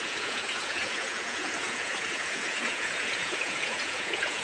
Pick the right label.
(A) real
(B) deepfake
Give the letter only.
B